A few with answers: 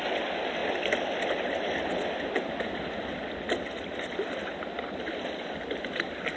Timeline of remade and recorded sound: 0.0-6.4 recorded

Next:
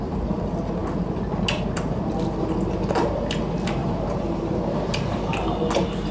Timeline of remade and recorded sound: 0.0-3.8 recorded; 3.8-4.6 remade; 4.6-6.1 recorded

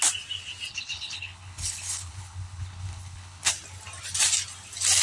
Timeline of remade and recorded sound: 0.0-0.7 recorded; 0.7-3.5 remade; 3.5-5.0 recorded